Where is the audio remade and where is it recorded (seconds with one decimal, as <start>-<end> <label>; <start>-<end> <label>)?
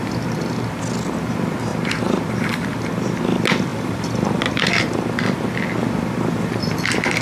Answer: 0.0-3.7 recorded; 3.7-4.4 remade; 4.4-7.2 recorded